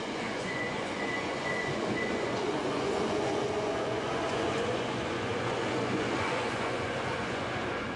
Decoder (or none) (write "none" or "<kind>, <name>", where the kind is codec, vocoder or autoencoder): vocoder, Vocos